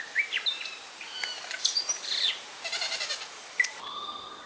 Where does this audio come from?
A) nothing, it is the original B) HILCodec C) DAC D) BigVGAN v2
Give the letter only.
D